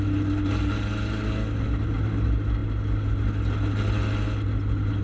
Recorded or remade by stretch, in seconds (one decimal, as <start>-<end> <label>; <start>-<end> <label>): 0.0-5.0 recorded